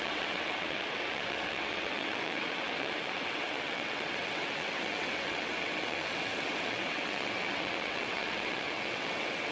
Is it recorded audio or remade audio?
remade